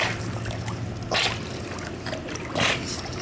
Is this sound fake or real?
real